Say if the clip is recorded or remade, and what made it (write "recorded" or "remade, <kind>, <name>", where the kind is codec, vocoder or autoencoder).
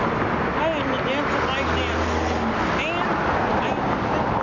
recorded